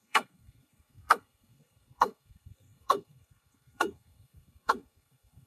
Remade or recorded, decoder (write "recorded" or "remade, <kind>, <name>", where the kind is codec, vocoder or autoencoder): remade, codec, SNAC